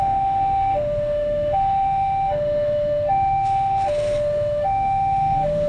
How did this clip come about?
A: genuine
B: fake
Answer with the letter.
B